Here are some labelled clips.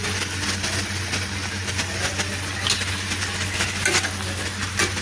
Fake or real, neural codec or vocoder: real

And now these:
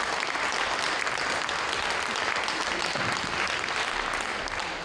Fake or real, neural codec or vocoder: real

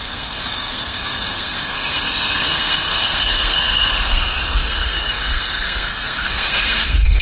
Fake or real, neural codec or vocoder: fake, codec, SNAC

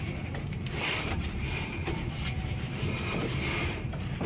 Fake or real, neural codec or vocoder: fake, vocoder, BigVGAN v2